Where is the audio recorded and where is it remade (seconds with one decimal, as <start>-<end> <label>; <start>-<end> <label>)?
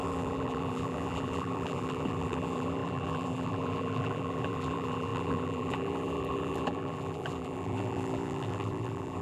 0.0-9.2 remade